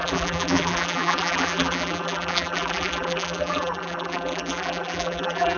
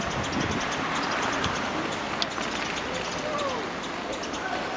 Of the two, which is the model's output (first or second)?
first